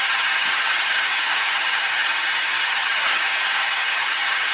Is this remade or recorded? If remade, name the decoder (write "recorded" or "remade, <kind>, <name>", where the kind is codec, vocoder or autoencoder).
remade, vocoder, HiFi-GAN